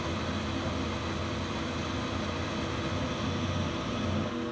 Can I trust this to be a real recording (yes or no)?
yes